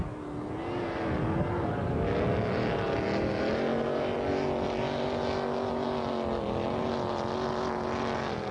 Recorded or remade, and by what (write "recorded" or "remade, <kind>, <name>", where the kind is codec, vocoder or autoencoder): recorded